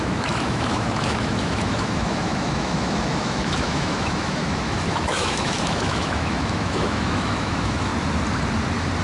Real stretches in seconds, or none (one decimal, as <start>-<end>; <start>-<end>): 7.9-9.0